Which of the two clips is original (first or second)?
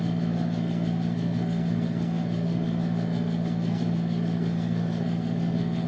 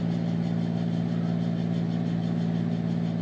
second